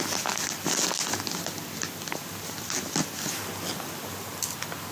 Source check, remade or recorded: recorded